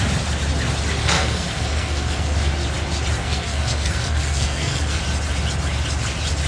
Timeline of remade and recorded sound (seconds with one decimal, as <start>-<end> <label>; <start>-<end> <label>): 0.0-1.0 recorded; 1.0-2.5 remade; 2.5-3.2 recorded; 3.2-5.0 remade; 5.0-6.5 recorded